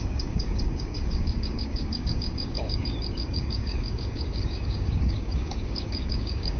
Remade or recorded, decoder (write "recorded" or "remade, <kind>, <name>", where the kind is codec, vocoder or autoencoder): remade, codec, DAC